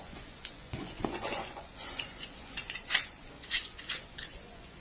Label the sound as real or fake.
fake